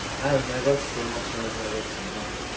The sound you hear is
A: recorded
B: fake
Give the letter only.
A